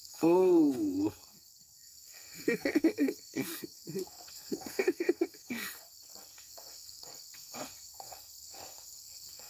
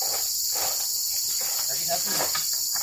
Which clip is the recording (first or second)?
second